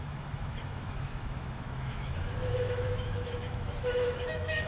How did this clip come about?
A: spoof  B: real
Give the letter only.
A